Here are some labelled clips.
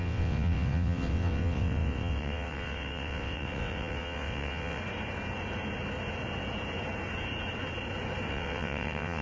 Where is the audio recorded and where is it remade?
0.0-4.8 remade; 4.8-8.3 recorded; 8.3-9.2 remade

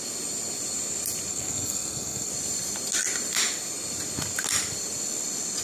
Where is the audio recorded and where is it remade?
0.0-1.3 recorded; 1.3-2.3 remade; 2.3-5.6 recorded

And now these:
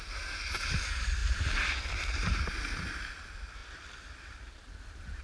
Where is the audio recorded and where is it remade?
0.0-5.2 recorded

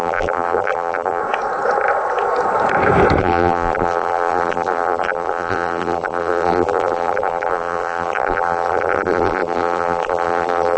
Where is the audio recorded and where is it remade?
0.0-1.2 remade; 1.2-3.2 recorded; 3.2-10.8 remade

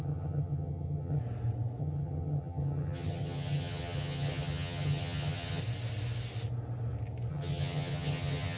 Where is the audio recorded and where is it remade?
0.0-1.2 remade; 1.2-1.8 recorded; 1.8-5.6 remade; 5.6-7.3 recorded; 7.3-8.6 remade

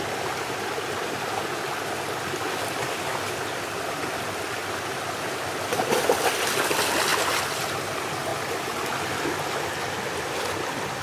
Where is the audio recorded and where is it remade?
0.0-11.0 recorded